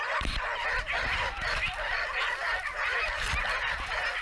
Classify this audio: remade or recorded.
recorded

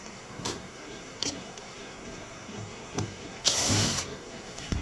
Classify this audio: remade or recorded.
remade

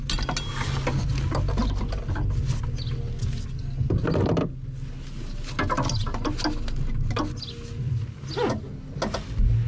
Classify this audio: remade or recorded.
recorded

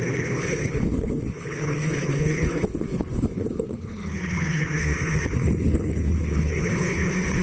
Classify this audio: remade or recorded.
remade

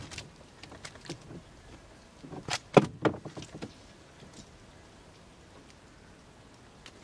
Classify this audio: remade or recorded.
recorded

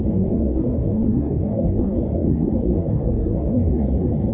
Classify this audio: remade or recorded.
remade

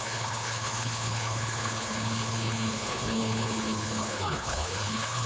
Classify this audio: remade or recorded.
remade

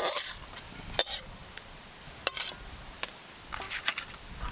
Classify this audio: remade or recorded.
recorded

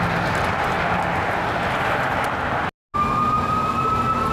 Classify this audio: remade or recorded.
recorded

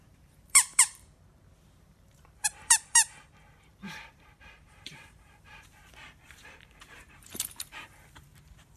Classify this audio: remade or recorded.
remade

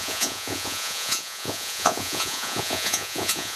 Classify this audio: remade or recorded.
remade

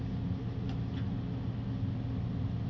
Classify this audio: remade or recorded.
recorded